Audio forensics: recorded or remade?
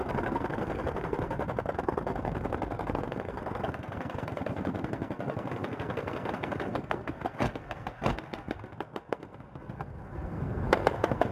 remade